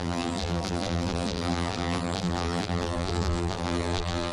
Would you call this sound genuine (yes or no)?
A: no